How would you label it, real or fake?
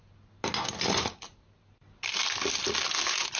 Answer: real